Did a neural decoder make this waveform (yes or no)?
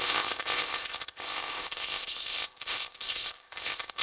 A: yes